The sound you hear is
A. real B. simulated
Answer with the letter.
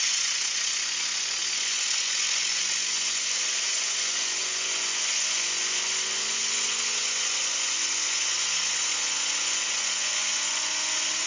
B